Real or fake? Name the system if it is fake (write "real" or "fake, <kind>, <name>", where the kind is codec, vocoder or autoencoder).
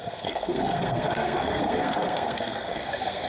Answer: fake, codec, SNAC